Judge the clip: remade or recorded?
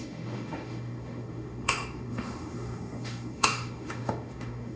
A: remade